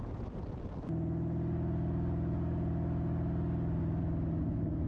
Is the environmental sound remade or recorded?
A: recorded